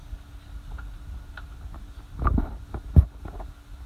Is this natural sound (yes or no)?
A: yes